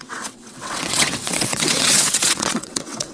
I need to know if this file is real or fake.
fake